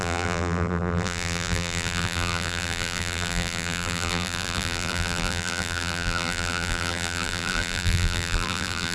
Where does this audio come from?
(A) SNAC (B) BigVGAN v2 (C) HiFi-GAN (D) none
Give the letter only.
B